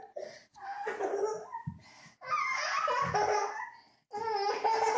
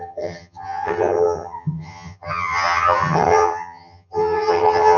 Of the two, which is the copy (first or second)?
second